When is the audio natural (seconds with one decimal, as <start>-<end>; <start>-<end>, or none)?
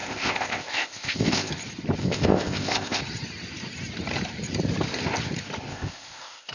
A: 1.5-2.0; 3.0-5.7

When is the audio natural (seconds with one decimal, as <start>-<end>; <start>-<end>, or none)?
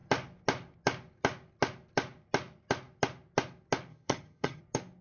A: 0.0-3.9; 4.6-5.0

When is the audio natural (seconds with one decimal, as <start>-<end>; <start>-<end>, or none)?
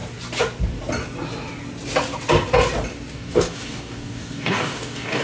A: 0.0-3.1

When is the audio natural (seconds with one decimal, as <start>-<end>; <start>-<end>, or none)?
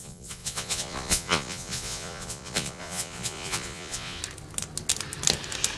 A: 4.2-5.8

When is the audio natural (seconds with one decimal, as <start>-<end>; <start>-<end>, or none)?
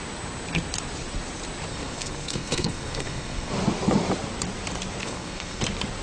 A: 0.0-1.7; 3.5-5.0; 5.6-6.0